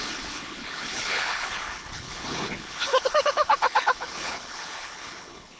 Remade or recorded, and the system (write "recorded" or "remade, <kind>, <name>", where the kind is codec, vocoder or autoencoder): remade, codec, HILCodec